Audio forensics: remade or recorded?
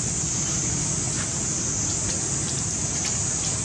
recorded